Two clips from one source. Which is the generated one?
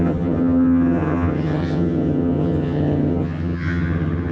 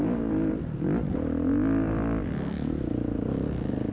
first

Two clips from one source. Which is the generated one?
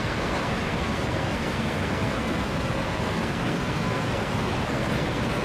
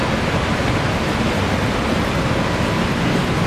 first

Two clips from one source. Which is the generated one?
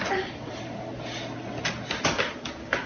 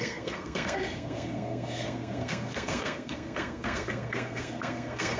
second